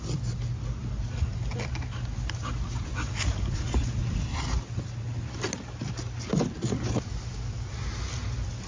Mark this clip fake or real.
real